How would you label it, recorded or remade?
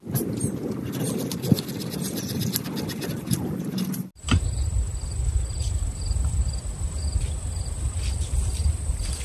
recorded